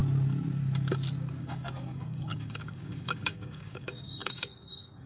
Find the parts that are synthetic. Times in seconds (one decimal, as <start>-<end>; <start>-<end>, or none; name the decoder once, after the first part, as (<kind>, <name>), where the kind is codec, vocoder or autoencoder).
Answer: 1.4-5.1 (codec, DAC)